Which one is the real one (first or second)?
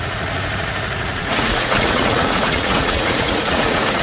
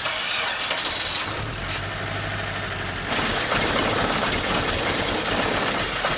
second